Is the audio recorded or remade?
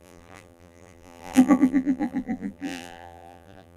remade